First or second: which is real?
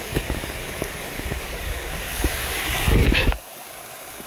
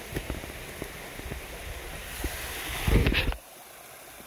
second